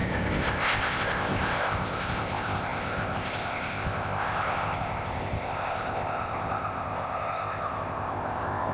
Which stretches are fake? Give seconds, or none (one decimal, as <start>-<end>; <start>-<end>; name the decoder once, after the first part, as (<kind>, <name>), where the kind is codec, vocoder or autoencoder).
0.0-8.7 (codec, ZipCodec)